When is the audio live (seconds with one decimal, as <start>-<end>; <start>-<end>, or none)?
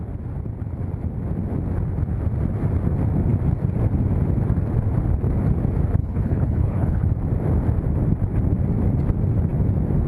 0.0-6.0; 7.1-10.1